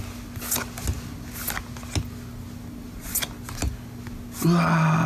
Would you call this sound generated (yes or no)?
no